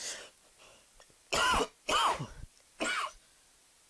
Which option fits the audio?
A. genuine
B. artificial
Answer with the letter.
A